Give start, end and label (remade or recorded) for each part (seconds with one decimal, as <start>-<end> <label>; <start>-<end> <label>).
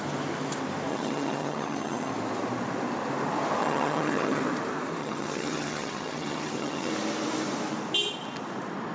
0.0-0.9 recorded; 0.9-2.1 remade; 2.1-3.6 recorded; 3.6-4.4 remade; 4.4-5.0 recorded; 5.0-6.9 remade; 6.9-8.9 recorded